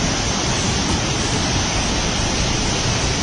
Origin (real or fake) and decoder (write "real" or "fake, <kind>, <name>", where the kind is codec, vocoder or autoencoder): real